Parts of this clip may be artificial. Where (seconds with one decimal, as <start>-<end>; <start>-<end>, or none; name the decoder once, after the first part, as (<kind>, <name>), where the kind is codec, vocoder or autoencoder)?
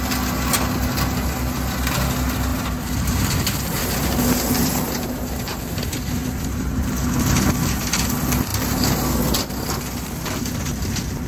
2.5-5.6 (vocoder, BigVGAN v2); 6.2-7.1; 8.5-9.0